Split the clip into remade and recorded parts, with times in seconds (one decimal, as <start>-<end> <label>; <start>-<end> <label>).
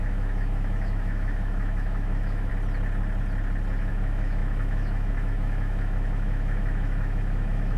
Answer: 0.0-2.5 remade; 2.5-3.9 recorded; 3.9-7.8 remade